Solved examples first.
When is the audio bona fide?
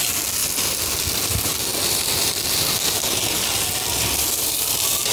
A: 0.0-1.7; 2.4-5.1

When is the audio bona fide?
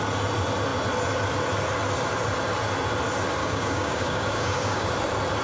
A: 0.0-3.4; 4.9-5.4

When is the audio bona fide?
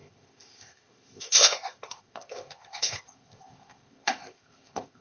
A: none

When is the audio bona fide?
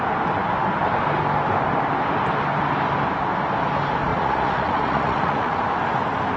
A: 0.0-4.1; 5.6-6.4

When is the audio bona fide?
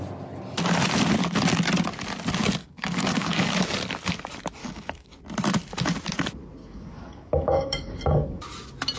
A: 0.0-2.6; 3.6-4.6; 5.2-6.6; 8.4-9.0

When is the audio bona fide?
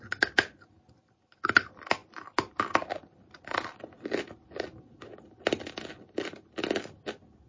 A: 2.0-3.3; 5.1-5.7